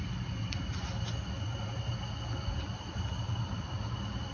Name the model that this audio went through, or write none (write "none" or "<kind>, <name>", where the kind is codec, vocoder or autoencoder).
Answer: none